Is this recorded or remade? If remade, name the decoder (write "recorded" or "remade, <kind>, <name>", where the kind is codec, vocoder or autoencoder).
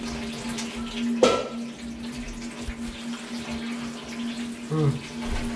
recorded